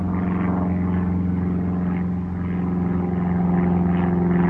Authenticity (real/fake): real